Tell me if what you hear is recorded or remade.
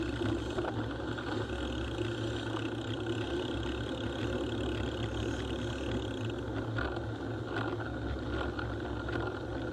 recorded